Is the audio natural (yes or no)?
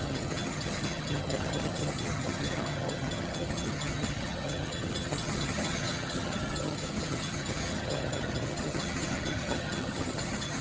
no